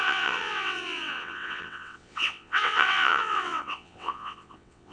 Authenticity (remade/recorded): remade